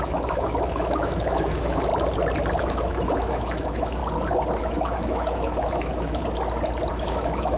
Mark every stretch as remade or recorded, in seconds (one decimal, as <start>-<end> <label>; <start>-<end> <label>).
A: 0.0-1.9 remade; 1.9-2.6 recorded; 2.6-4.0 remade; 4.0-4.6 recorded; 4.6-6.2 remade; 6.2-6.9 recorded; 6.9-7.6 remade